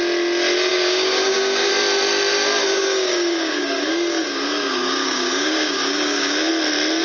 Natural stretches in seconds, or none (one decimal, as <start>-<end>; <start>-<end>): 0.0-0.7; 1.7-2.6; 6.5-7.0